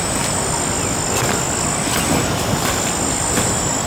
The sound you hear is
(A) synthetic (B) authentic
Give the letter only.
B